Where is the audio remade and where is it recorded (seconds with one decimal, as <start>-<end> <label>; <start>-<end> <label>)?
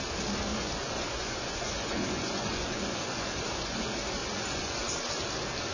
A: 0.0-0.5 recorded; 0.5-3.8 remade; 3.8-4.2 recorded; 4.2-4.8 remade; 4.8-5.7 recorded